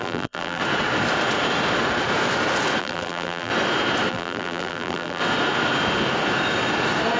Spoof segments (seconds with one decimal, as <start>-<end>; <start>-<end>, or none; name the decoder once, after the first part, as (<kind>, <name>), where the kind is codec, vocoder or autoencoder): 0.0-0.6 (vocoder, BigVGAN v2); 2.8-3.5; 4.1-5.2